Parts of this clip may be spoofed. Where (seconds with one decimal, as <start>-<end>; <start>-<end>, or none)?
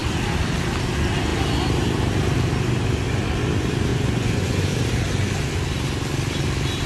3.9-4.6